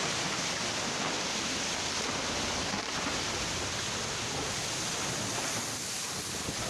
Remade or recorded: recorded